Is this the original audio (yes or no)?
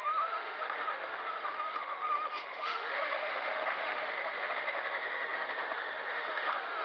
no